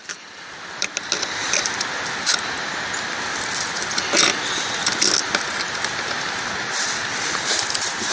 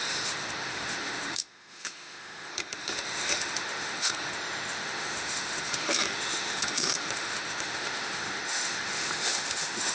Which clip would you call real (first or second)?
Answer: first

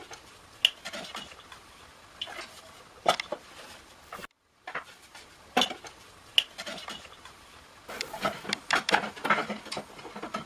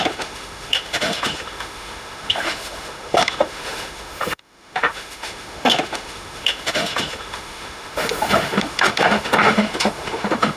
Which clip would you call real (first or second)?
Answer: first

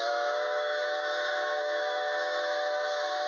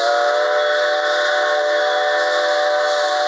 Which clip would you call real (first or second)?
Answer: second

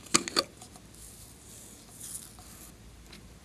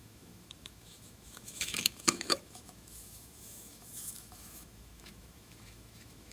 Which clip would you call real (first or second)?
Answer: first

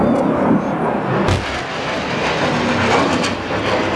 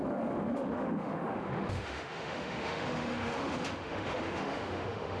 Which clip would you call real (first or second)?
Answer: first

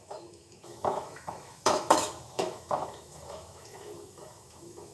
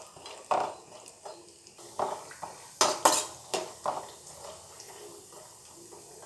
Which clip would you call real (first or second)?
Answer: second